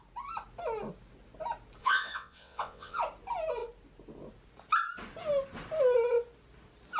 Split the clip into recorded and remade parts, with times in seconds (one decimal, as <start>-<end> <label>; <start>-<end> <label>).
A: 0.0-1.8 recorded; 1.8-3.0 remade; 3.0-7.0 recorded